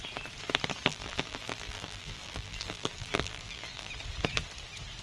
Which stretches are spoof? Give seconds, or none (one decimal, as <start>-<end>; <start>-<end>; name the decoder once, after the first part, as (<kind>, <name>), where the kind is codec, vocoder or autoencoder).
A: 0.9-3.9 (vocoder, BigVGAN v2)